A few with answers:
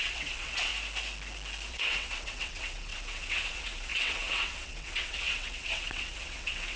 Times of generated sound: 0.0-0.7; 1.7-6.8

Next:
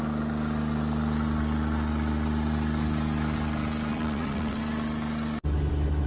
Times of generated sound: 3.9-4.6